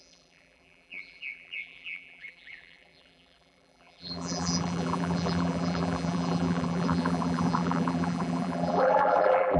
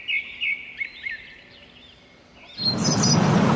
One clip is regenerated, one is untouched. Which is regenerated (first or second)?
first